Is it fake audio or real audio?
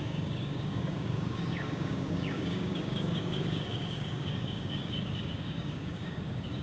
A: fake